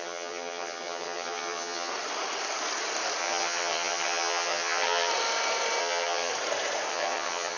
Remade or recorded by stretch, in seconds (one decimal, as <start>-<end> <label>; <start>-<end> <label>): 0.0-1.9 remade; 1.9-3.2 recorded; 3.2-5.1 remade; 5.1-5.8 recorded; 5.8-6.3 remade; 6.3-6.9 recorded; 6.9-7.6 remade